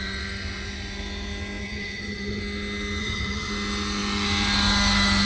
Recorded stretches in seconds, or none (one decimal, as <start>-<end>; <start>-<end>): 0.0-1.6; 2.4-3.0; 3.5-5.2